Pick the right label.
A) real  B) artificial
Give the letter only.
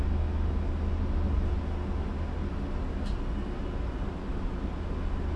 A